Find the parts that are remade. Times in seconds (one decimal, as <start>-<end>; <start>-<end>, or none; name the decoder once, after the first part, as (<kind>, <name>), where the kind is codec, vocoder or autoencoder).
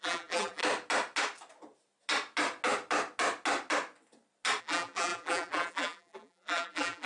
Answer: 0.0-0.6 (vocoder, BigVGAN v2); 4.6-7.1